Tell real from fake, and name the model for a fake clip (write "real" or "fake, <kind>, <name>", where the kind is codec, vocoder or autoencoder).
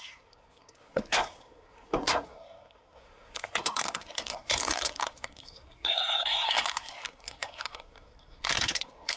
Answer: fake, codec, SNAC